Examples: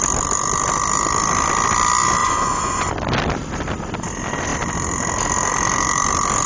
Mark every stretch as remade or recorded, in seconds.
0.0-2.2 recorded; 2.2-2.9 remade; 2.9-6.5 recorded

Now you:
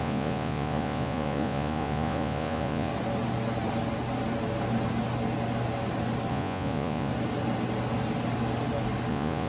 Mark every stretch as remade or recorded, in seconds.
0.0-2.9 remade; 2.9-6.3 recorded; 6.3-7.1 remade; 7.1-9.1 recorded; 9.1-9.5 remade

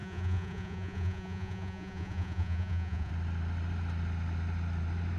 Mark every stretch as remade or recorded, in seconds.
0.0-3.1 remade; 3.1-5.2 recorded

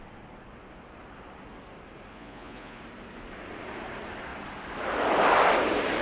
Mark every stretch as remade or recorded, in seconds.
0.0-2.1 recorded; 2.1-2.8 remade; 2.8-6.0 recorded

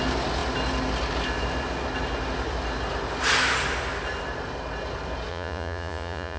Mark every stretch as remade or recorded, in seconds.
0.0-5.3 recorded; 5.3-6.4 remade

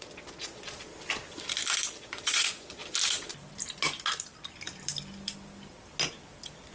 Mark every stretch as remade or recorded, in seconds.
0.0-0.9 remade; 0.9-2.0 recorded; 2.0-2.8 remade; 2.8-6.7 recorded